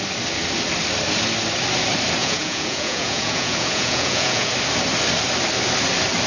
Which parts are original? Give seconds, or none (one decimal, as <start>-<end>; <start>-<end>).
0.0-2.2; 4.5-6.3